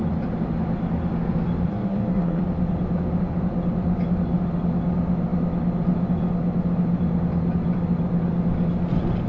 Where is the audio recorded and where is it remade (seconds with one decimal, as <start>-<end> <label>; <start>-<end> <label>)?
0.0-1.7 recorded; 1.7-2.4 remade; 2.4-9.3 recorded